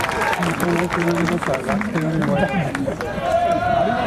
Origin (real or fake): fake